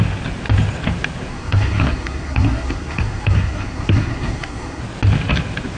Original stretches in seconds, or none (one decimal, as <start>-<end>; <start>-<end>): 0.0-1.3; 4.8-5.8